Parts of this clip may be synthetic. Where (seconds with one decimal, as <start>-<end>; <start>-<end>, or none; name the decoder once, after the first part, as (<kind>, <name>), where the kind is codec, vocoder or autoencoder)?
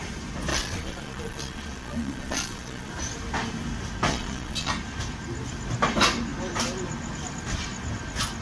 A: 0.5-2.9 (vocoder, Vocos); 4.1-4.7